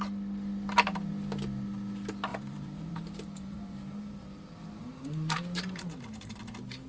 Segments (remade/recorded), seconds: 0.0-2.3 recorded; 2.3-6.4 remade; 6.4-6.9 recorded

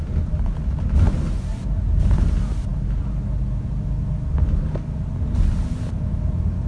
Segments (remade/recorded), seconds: 0.0-6.7 recorded

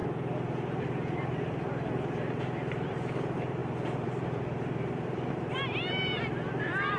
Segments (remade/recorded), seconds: 0.0-0.8 recorded; 0.8-7.0 remade